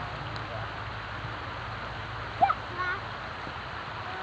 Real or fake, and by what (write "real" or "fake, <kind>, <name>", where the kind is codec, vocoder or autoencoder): real